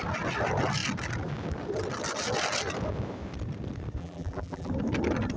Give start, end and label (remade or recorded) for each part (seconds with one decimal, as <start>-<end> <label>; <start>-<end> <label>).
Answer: 0.0-4.0 recorded; 4.0-4.7 remade; 4.7-5.4 recorded